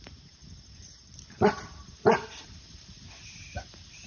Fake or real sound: fake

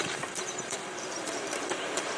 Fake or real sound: fake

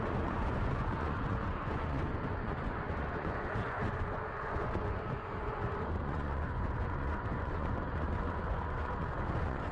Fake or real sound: fake